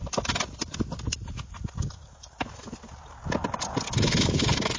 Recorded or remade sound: recorded